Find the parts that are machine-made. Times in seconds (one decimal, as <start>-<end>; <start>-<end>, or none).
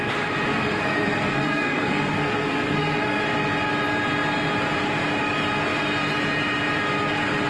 0.5-3.2